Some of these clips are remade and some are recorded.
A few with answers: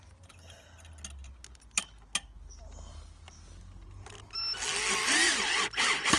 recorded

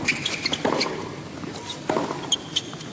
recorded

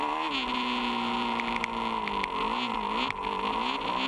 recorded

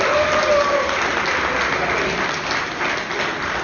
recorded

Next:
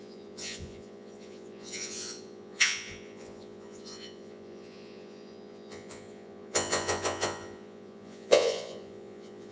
remade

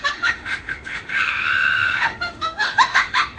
remade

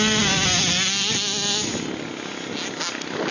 recorded